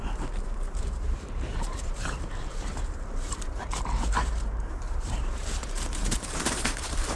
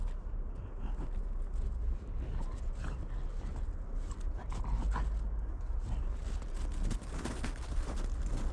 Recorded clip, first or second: second